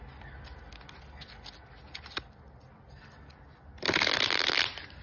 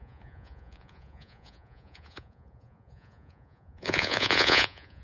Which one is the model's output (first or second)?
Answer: second